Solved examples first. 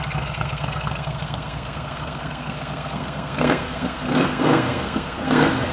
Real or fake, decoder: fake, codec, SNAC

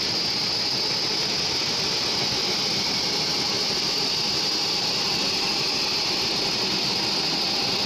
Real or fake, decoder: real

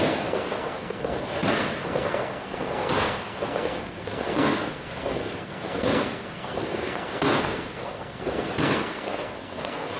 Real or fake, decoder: fake, codec, SNAC